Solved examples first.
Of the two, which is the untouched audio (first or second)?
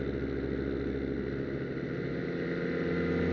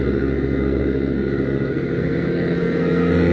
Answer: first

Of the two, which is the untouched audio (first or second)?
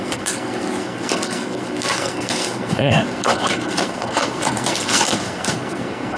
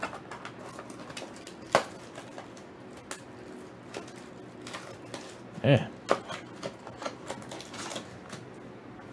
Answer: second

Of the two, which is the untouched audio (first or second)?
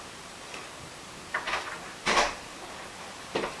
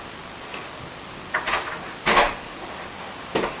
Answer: second